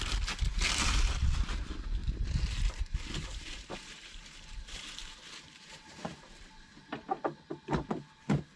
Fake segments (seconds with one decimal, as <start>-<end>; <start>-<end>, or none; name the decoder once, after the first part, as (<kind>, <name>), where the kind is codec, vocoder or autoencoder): 2.0-6.1 (vocoder, BigVGAN v2)